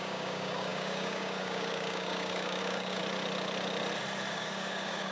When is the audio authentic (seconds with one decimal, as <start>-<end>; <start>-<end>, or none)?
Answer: 3.0-4.3

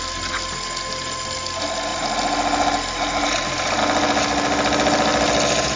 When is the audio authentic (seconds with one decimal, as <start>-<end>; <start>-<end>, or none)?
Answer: 0.0-5.8

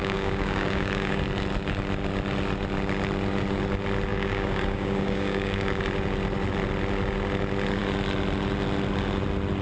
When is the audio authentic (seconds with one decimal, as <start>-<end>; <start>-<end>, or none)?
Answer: 1.2-4.1; 5.8-9.6

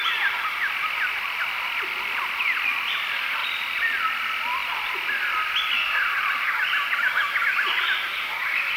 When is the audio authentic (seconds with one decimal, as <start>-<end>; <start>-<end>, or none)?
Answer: 3.4-4.0

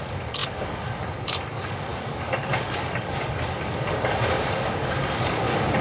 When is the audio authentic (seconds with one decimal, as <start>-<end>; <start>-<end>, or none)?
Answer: none

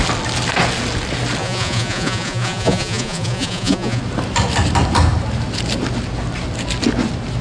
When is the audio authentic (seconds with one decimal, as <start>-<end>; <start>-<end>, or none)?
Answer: 0.0-1.4; 4.0-7.4

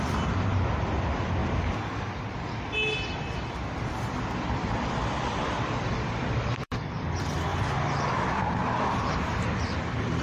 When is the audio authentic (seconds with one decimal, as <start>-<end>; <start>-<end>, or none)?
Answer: 1.4-3.7